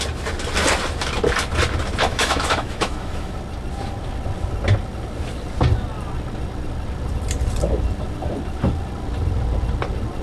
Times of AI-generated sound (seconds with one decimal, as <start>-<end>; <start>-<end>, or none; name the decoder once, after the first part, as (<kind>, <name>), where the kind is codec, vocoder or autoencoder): 2.1-3.3 (autoencoder, DAC-VAE)

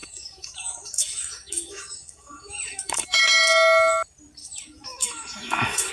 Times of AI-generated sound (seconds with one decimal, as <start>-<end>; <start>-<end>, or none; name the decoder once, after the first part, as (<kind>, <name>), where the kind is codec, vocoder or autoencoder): 0.0-3.2 (autoencoder, DAC-VAE); 4.4-5.9